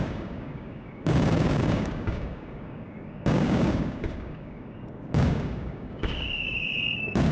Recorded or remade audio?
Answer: remade